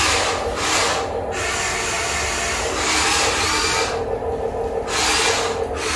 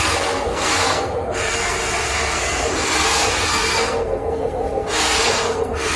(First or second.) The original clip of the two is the first